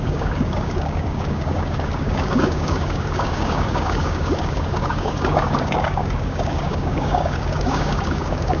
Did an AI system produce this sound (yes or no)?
yes